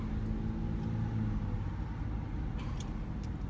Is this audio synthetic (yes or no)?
no